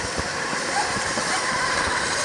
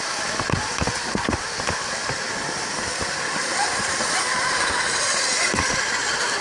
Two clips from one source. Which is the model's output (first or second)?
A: first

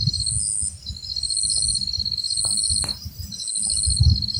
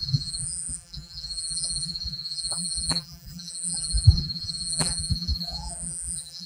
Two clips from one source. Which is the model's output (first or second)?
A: second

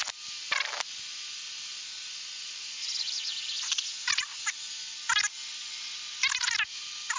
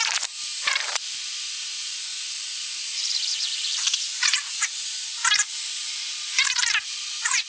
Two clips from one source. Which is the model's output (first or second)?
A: second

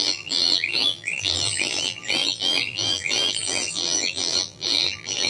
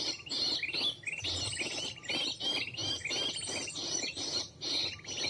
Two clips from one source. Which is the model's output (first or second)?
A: first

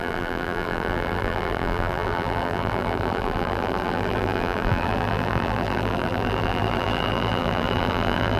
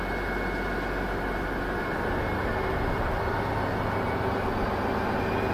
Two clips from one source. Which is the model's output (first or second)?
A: first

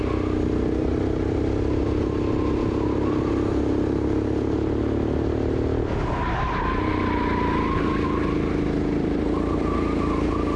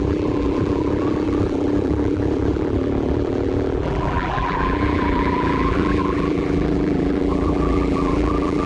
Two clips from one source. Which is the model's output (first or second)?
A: second